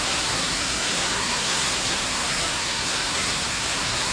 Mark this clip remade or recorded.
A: remade